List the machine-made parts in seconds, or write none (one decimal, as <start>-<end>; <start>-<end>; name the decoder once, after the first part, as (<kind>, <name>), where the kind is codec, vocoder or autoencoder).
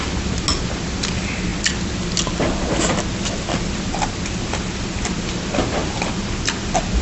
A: none